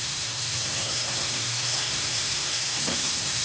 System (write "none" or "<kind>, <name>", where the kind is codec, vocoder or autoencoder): codec, SNAC